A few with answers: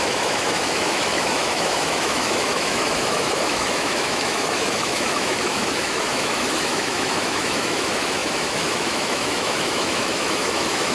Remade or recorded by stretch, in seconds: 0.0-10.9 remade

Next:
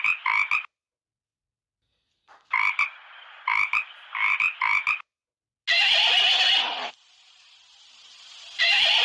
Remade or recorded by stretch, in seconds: 0.0-9.0 recorded

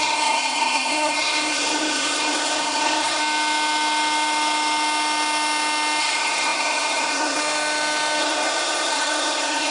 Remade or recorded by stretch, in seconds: 0.0-3.2 remade; 3.2-6.0 recorded; 6.0-7.4 remade; 7.4-8.2 recorded; 8.2-9.7 remade

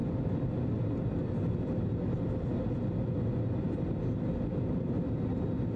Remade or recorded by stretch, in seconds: 0.0-5.8 recorded

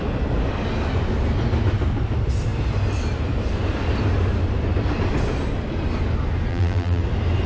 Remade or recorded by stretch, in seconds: 0.0-6.5 recorded; 6.5-7.0 remade; 7.0-7.5 recorded